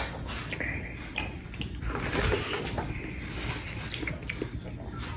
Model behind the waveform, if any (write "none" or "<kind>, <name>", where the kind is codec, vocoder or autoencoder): none